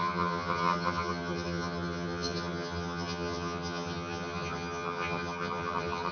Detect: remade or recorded remade